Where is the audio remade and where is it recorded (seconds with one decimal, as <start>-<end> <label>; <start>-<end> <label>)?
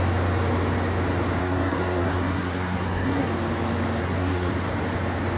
0.0-1.4 recorded; 1.4-3.3 remade; 3.3-4.0 recorded; 4.0-4.5 remade; 4.5-5.4 recorded